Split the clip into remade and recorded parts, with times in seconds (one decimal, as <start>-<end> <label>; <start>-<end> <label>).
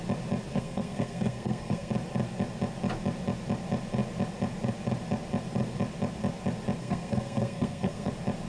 0.0-0.5 recorded; 0.5-1.9 remade; 1.9-6.8 recorded; 6.8-8.1 remade; 8.1-8.5 recorded